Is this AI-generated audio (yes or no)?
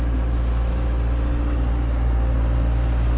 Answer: no